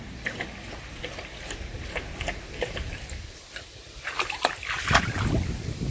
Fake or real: real